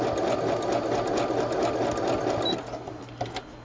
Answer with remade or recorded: recorded